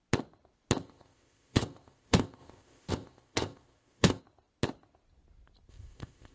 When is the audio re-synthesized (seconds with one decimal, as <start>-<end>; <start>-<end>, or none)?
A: 0.8-4.2; 5.7-6.3